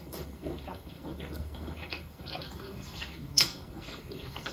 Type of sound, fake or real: fake